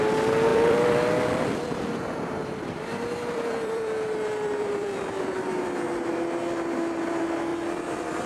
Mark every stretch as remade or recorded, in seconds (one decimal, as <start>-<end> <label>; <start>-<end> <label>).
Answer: 0.0-0.5 recorded; 0.5-5.5 remade; 5.5-7.5 recorded; 7.5-8.3 remade